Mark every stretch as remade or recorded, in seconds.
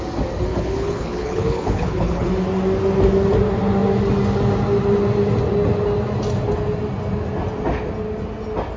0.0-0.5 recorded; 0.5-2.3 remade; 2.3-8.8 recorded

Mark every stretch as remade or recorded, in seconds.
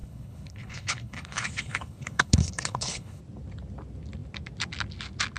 0.0-3.2 remade; 3.2-5.4 recorded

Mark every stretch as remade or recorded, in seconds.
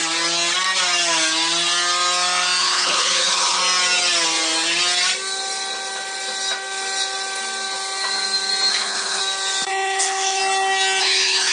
0.0-2.6 recorded; 2.6-3.6 remade; 3.6-8.7 recorded; 8.7-9.2 remade; 9.2-9.7 recorded; 9.7-10.4 remade; 10.4-11.0 recorded; 11.0-11.5 remade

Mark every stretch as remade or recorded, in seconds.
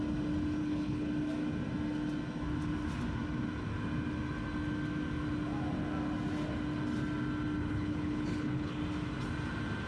0.0-0.6 recorded; 0.6-1.1 remade; 1.1-7.6 recorded; 7.6-8.8 remade; 8.8-9.9 recorded